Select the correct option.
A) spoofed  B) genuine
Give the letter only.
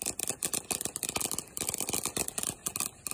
B